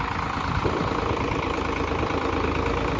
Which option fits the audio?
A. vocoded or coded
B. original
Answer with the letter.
B